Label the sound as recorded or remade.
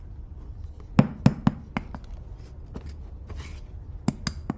recorded